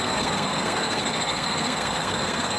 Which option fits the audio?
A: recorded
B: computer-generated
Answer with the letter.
B